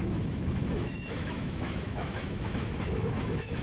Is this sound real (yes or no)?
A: no